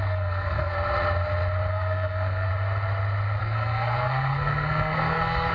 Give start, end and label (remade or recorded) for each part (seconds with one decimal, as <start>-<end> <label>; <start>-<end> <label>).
0.0-0.7 remade; 0.7-1.7 recorded; 1.7-2.5 remade; 2.5-3.4 recorded; 3.4-5.5 remade